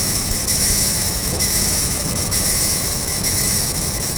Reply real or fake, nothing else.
fake